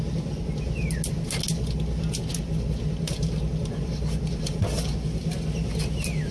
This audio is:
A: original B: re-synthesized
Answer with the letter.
A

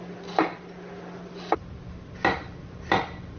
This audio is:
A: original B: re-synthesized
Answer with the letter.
A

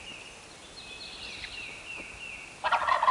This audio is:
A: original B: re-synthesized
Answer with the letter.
A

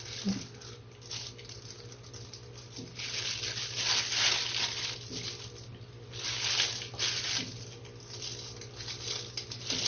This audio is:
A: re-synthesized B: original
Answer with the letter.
B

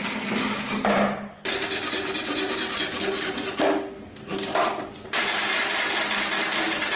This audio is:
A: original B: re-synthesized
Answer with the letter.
A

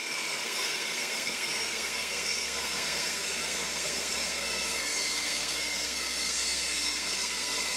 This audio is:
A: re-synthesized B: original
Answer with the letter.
A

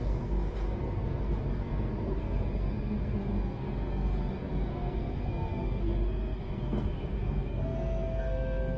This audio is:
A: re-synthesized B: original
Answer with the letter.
A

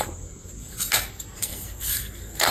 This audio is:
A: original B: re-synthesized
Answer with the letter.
B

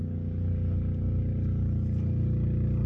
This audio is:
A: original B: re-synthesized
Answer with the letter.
A